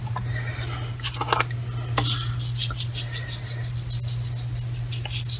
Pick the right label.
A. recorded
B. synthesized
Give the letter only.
A